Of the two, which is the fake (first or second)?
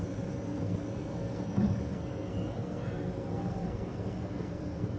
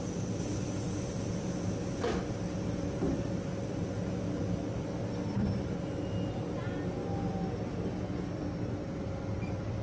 first